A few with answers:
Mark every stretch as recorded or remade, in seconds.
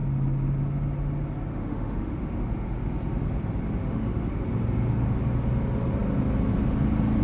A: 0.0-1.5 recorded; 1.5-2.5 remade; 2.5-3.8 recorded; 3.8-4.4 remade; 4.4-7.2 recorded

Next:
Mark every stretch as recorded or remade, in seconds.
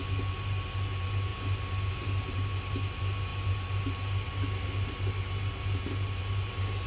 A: 0.0-6.9 recorded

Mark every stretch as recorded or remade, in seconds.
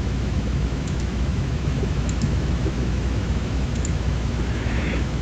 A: 0.0-5.2 remade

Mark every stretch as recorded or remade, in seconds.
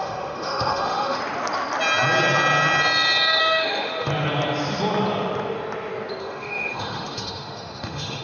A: 0.0-1.2 remade; 1.2-3.4 recorded; 3.4-4.1 remade; 4.1-6.2 recorded; 6.2-8.2 remade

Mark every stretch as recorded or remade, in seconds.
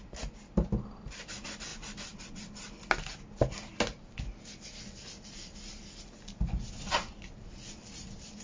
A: 0.0-8.4 recorded